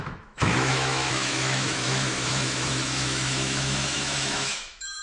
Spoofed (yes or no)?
yes